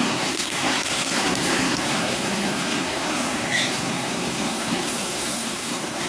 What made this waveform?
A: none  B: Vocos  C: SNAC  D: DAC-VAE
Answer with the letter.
C